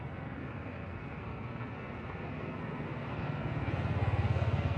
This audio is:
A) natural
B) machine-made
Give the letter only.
B